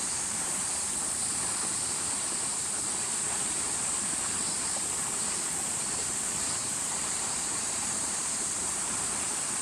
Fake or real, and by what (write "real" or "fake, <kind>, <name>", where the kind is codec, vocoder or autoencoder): fake, vocoder, BigVGAN v2